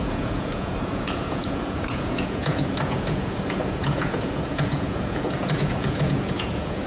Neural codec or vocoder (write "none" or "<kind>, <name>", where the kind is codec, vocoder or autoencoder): vocoder, Vocos